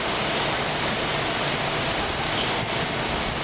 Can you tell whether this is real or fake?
real